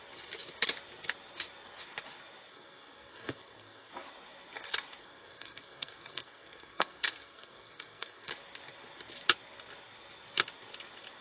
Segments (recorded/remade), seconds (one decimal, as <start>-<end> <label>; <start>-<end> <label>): 0.0-2.5 recorded; 2.5-3.9 remade; 3.9-5.0 recorded; 5.0-8.3 remade; 8.3-11.2 recorded